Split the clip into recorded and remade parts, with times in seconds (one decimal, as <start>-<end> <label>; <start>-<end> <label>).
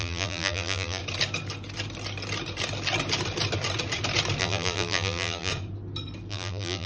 0.0-1.0 remade; 1.0-4.4 recorded; 4.4-5.5 remade; 5.5-6.3 recorded; 6.3-6.9 remade